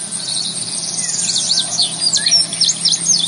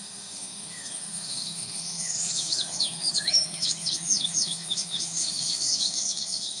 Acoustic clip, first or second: first